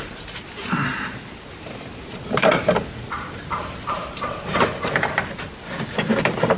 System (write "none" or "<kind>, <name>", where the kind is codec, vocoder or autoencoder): none